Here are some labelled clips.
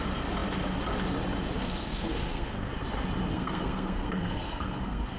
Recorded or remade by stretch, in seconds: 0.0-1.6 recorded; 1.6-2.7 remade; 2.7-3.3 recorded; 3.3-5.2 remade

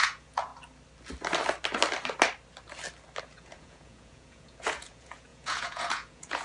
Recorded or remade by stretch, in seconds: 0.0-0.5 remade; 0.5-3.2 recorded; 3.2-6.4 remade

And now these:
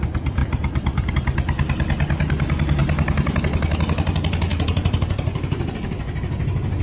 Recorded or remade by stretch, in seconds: 0.0-0.4 recorded; 0.4-1.1 remade; 1.1-2.8 recorded; 2.8-3.4 remade; 3.4-4.5 recorded; 4.5-5.7 remade; 5.7-6.8 recorded